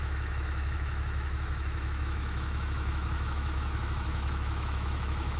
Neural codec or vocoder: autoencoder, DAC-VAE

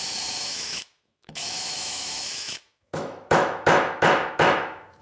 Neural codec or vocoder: autoencoder, DAC-VAE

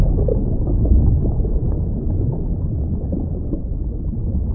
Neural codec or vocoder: none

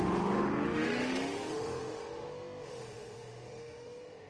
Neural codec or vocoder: autoencoder, DAC-VAE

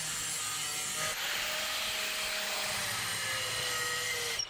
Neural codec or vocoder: none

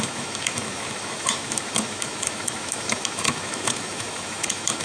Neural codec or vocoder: autoencoder, DAC-VAE